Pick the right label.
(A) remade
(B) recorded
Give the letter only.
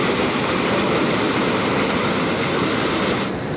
B